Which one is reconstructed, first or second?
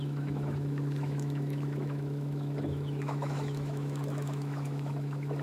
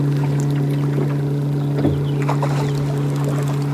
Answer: first